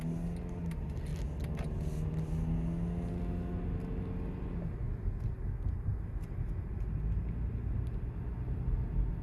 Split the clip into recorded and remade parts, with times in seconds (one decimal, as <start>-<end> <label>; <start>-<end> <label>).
0.0-9.2 recorded